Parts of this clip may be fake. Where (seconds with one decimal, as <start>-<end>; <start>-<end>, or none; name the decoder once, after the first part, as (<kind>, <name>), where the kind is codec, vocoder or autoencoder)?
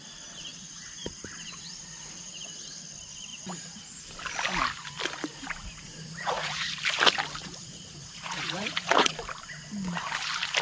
0.5-2.8 (vocoder, Vocos); 3.3-3.8; 5.3-6.7; 7.4-9.1